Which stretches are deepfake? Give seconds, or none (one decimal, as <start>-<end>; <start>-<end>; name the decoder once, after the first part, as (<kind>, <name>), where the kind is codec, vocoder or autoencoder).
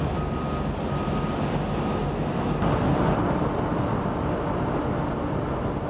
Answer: none